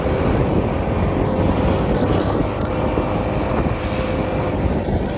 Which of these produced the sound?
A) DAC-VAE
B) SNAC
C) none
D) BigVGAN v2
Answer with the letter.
C